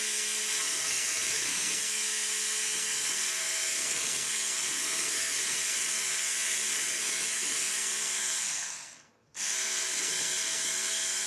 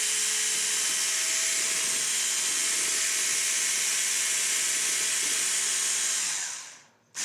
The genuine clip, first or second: second